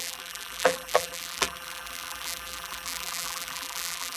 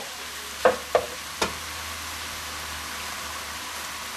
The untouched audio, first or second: second